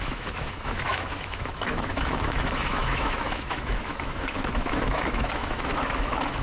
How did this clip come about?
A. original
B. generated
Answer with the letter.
B